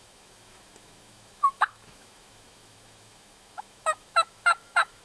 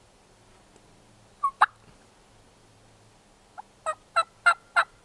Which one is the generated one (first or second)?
first